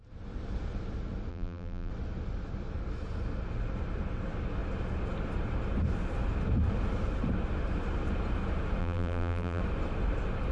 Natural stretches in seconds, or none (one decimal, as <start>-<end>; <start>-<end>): 0.0-1.3; 1.9-8.8; 9.6-10.5